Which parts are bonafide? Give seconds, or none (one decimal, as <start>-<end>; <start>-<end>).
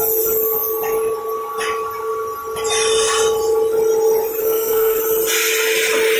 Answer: 0.0-4.4; 5.0-6.2